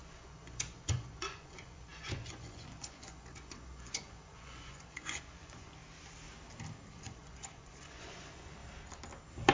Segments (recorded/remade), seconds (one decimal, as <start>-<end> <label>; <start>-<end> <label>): 0.0-5.8 remade; 5.8-6.9 recorded; 6.9-8.6 remade; 8.6-9.5 recorded